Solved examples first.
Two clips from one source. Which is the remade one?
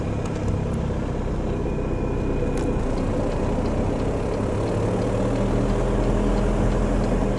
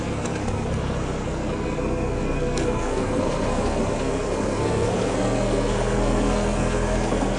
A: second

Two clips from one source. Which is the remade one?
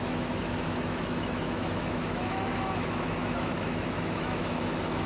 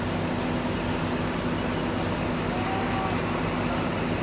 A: first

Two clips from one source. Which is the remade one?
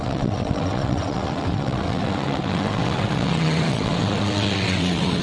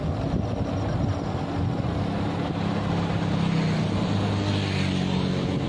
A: first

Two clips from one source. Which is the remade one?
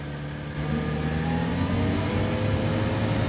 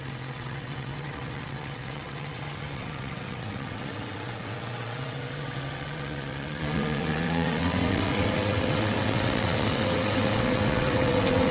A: second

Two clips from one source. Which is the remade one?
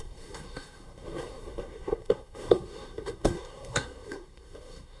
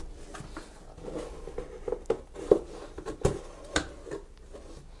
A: first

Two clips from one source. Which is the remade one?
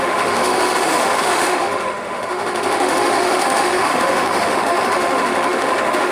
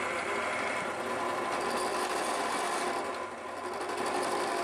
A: first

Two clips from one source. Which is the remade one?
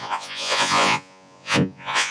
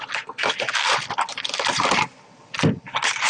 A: first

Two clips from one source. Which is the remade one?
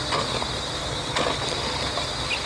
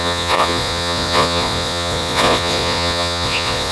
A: second